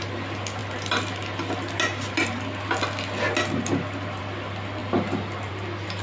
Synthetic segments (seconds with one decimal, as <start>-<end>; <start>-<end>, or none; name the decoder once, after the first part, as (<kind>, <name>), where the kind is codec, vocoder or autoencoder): none